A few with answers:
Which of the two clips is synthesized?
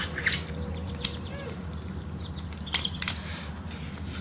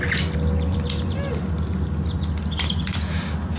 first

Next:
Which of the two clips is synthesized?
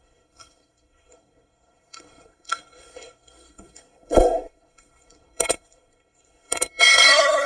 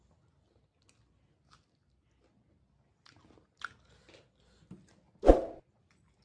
first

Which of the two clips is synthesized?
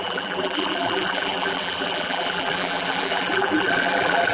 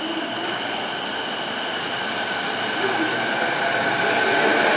first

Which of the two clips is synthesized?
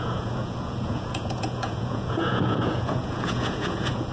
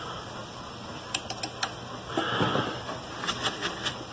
first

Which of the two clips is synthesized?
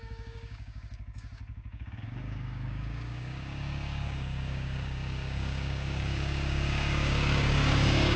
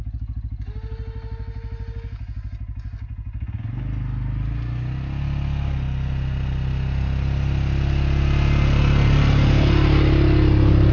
first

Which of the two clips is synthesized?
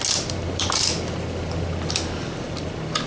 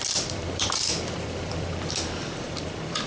second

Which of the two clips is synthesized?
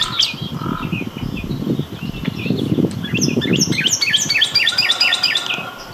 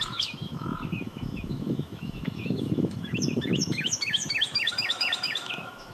second